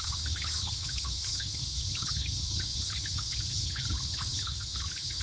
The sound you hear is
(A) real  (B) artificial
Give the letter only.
B